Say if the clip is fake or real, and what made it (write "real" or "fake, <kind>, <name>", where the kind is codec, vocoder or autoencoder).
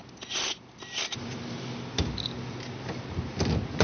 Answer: real